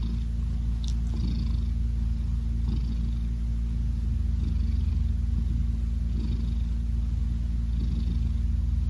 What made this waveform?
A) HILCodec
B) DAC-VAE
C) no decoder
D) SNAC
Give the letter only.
C